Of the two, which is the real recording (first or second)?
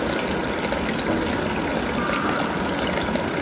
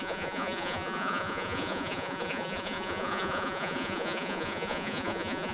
first